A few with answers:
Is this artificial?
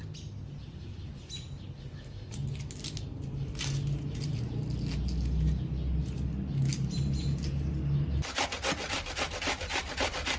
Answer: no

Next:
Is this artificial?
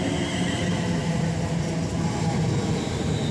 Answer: no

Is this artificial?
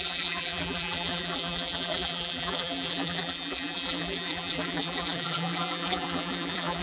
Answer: yes